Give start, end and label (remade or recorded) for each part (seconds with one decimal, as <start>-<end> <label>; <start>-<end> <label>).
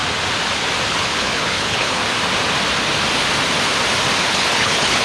0.0-0.9 recorded; 0.9-2.0 remade; 2.0-4.2 recorded; 4.2-5.0 remade